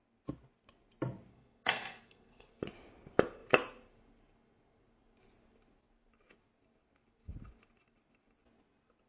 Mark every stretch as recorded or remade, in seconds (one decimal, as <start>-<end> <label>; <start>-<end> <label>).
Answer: 0.0-1.3 recorded; 1.3-2.6 remade; 2.6-9.1 recorded